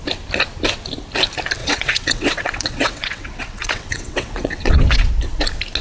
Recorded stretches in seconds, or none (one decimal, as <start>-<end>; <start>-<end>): 0.0-1.6; 5.1-5.8

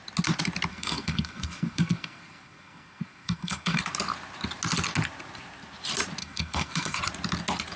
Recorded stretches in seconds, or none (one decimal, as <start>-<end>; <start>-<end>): 0.0-0.7; 3.8-6.2; 7.0-7.8

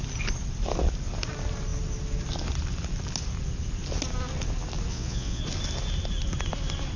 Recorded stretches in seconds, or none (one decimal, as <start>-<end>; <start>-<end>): 0.0-4.9; 5.4-7.0

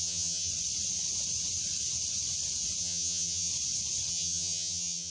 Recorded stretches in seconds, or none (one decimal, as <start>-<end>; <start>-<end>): 0.5-2.8; 3.5-4.1